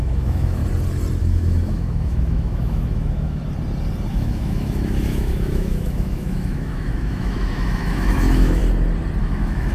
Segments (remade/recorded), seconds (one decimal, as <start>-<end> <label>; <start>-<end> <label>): 0.0-0.6 remade; 0.6-1.2 recorded; 1.2-3.4 remade; 3.4-4.1 recorded; 4.1-8.6 remade; 8.6-9.2 recorded; 9.2-9.7 remade